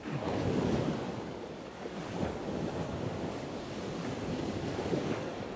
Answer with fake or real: fake